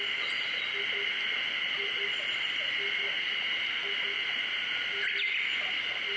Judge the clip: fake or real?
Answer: real